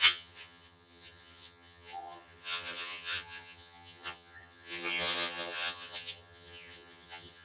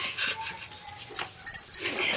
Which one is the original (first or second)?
second